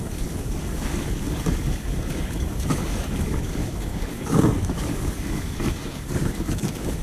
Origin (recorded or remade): remade